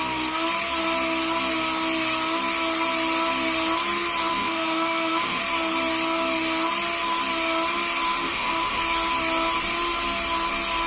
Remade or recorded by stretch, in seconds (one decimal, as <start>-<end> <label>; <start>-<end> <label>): 0.0-4.3 recorded; 4.3-5.4 remade; 5.4-8.2 recorded; 8.2-8.8 remade; 8.8-10.9 recorded